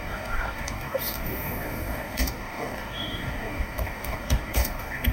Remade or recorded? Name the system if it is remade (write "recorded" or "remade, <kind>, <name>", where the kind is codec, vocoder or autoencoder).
remade, codec, DAC